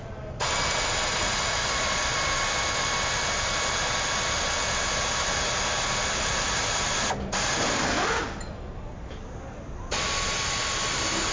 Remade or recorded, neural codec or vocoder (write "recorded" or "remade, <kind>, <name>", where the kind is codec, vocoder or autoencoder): recorded